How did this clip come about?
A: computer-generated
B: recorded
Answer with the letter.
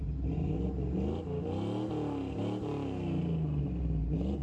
B